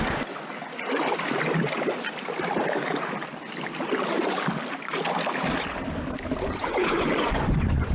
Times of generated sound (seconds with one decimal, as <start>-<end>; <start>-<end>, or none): 6.6-7.9